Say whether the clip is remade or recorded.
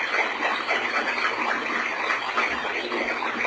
recorded